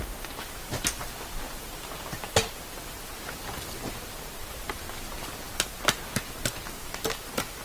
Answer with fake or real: real